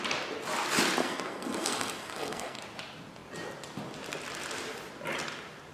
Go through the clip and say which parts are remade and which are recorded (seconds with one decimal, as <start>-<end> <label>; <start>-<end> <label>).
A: 0.0-1.0 recorded; 1.0-2.6 remade; 2.6-5.7 recorded